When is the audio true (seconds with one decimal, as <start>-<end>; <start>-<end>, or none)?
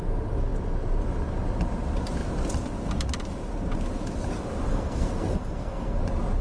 0.0-4.7; 6.0-6.4